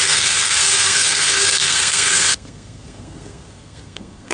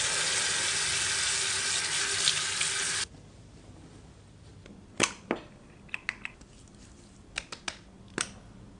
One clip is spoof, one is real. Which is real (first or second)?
second